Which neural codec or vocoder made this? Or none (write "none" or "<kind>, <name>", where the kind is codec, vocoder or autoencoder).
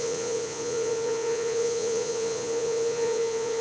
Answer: vocoder, Vocos